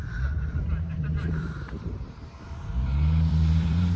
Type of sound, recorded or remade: remade